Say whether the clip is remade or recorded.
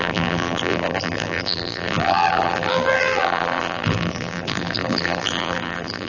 remade